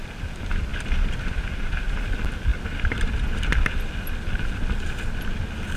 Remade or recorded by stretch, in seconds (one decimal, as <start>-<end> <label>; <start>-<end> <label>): 0.0-5.8 recorded